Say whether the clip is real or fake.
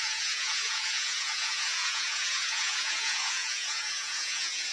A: fake